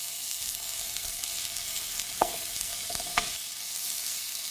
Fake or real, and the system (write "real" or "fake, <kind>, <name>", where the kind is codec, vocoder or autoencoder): fake, codec, SNAC